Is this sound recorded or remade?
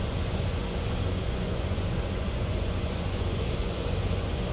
remade